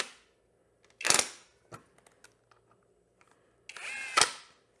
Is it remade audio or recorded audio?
recorded